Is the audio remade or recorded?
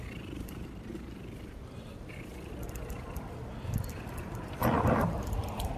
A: remade